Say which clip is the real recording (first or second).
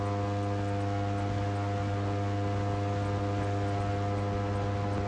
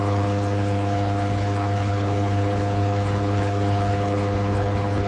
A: first